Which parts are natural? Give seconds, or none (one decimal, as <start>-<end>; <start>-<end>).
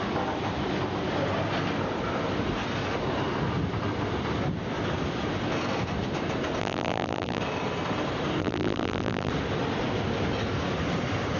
0.0-6.6; 7.4-8.4; 9.3-11.4